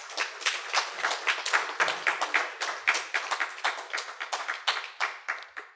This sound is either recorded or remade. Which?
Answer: recorded